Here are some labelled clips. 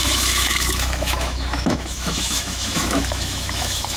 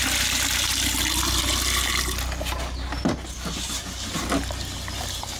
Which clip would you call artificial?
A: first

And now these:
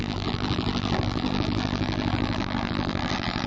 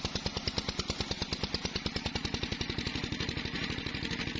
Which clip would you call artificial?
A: first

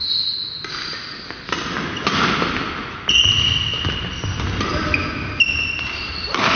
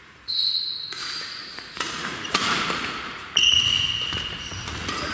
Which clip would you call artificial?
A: second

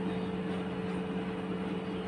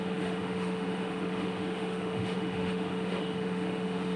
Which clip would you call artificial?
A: second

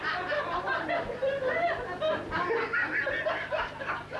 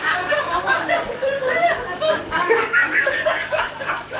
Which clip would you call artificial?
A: second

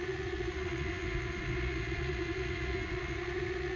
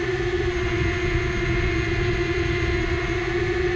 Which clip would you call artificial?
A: first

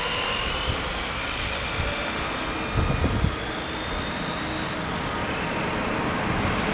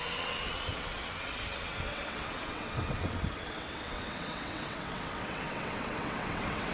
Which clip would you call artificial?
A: second